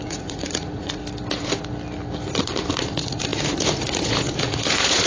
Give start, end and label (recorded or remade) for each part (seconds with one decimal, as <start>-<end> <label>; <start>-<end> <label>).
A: 0.0-1.0 remade; 1.0-2.7 recorded; 2.7-5.1 remade